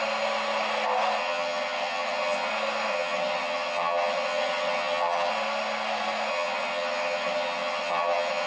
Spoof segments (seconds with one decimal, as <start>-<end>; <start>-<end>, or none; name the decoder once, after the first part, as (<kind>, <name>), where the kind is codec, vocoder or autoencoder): 1.2-2.5 (vocoder, HiFi-GAN); 2.9-5.3; 6.3-8.5